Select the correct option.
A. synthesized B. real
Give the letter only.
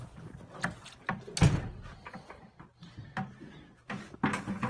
B